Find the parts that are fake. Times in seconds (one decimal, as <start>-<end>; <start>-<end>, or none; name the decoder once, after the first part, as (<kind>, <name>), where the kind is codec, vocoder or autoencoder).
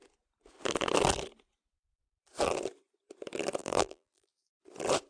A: 3.6-4.6 (vocoder, BigVGAN v2)